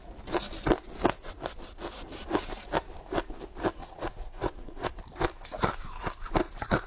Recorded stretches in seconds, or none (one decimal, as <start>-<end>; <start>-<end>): 0.0-3.8; 4.9-6.9